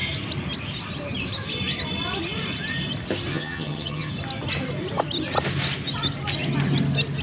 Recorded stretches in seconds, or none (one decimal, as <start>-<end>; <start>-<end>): 0.0-3.3; 4.1-7.2